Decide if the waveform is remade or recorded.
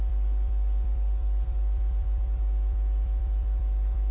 remade